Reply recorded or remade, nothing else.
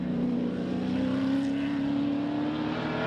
recorded